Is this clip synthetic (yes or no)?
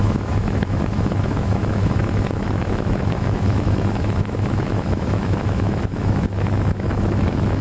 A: yes